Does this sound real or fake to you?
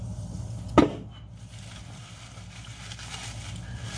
real